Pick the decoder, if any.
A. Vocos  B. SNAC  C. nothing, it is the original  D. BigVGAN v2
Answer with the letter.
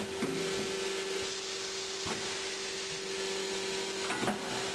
C